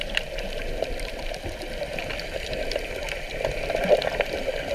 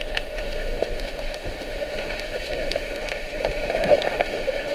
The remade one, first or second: second